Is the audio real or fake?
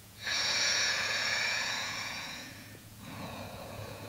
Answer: fake